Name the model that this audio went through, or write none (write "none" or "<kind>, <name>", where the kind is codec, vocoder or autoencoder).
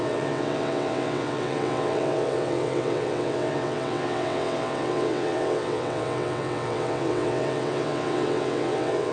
vocoder, WaveNeXt